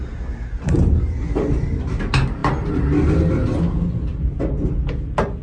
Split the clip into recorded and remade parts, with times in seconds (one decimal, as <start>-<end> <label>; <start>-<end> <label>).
0.0-5.4 recorded